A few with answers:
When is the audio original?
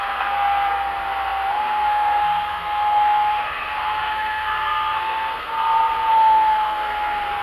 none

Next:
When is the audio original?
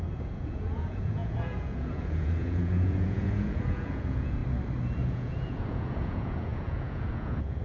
4.4-5.0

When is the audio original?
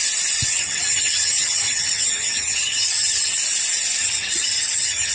0.0-0.5; 3.4-4.0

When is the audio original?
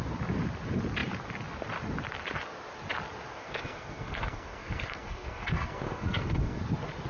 0.0-3.3; 6.6-7.1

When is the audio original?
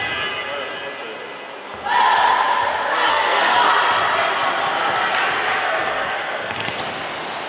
0.0-3.1; 3.7-5.6; 6.8-7.5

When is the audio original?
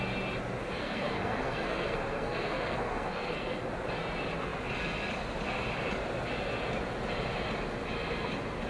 0.0-0.8; 3.7-8.7